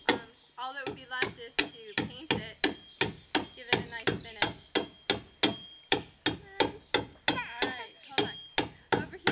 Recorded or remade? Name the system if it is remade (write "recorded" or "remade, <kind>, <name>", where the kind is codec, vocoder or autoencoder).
recorded